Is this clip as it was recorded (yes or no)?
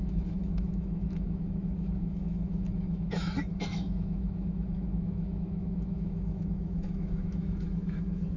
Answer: no